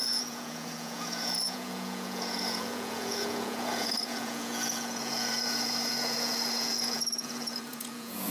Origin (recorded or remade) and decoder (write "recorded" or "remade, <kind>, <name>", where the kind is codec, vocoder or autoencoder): remade, vocoder, Vocos